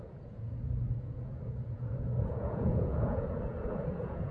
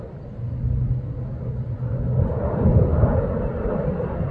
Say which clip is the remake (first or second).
first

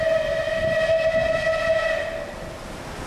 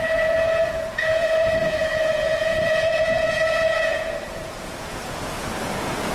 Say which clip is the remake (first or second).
second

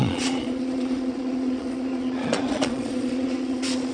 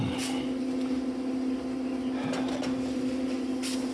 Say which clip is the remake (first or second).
first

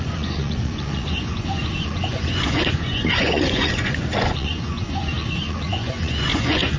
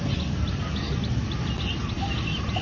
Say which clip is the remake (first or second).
first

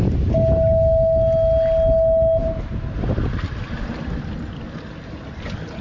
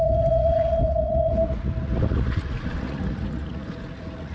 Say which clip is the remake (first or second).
second